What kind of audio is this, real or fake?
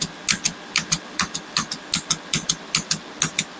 real